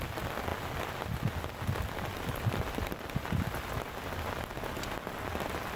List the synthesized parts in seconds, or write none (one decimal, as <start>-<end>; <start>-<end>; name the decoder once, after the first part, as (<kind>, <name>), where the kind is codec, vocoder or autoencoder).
none